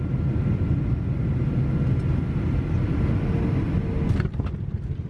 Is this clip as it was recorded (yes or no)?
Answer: yes